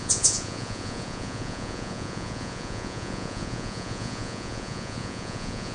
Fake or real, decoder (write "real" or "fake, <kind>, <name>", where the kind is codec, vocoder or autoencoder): fake, vocoder, Vocos